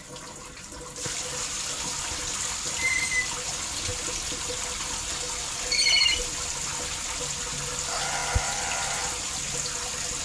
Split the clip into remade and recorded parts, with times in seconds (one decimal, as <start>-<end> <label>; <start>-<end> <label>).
0.0-10.2 recorded